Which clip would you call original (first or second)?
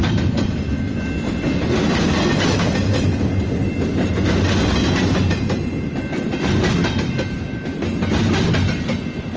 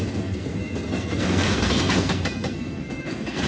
first